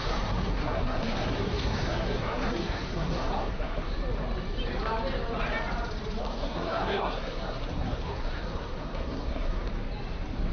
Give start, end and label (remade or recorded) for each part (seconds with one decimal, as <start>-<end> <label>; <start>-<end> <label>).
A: 0.0-3.9 remade; 3.9-6.2 recorded; 6.2-9.7 remade; 9.7-10.5 recorded